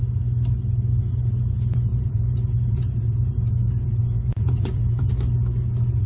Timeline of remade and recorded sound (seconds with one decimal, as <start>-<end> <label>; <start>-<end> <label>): 0.0-1.9 recorded; 1.9-5.1 remade; 5.1-6.1 recorded